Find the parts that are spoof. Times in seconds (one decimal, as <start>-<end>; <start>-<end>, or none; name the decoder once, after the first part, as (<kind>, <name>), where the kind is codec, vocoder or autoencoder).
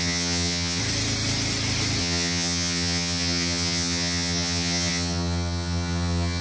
0.0-0.8 (vocoder, HiFi-GAN); 2.0-6.4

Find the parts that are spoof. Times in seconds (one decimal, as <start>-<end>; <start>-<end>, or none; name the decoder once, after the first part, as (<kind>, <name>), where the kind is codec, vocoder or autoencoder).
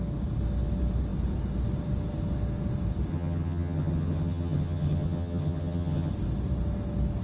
3.1-6.1 (vocoder, HiFi-GAN)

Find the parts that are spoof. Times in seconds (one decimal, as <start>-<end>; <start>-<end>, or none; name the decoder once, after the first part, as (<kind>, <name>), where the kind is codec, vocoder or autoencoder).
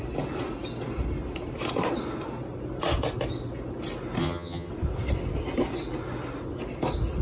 4.2-4.7 (vocoder, HiFi-GAN)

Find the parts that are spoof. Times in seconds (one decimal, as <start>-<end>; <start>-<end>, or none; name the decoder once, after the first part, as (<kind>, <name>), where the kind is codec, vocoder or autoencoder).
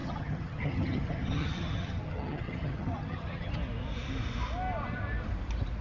0.0-3.5 (vocoder, HiFi-GAN)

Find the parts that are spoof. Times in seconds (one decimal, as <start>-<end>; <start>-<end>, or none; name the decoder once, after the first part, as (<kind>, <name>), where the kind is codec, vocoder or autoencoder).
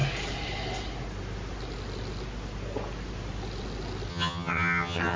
4.1-5.2 (vocoder, HiFi-GAN)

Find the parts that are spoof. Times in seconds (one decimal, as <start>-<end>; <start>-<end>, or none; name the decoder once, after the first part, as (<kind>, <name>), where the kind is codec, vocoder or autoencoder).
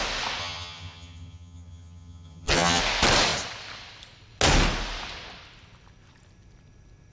0.4-2.8 (vocoder, HiFi-GAN)